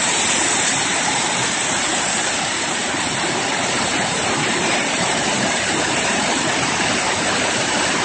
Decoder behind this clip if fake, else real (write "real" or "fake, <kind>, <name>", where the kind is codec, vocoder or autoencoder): fake, vocoder, BigVGAN v2